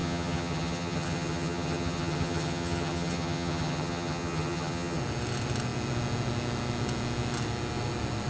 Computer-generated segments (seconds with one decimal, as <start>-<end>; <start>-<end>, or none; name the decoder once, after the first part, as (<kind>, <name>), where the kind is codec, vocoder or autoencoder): 0.0-5.0 (vocoder, HiFi-GAN)